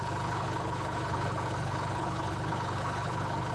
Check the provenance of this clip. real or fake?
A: fake